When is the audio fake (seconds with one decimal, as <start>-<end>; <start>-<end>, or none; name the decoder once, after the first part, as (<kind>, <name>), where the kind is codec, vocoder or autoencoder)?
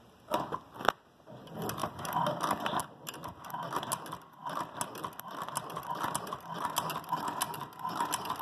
1.8-2.8 (vocoder, BigVGAN v2)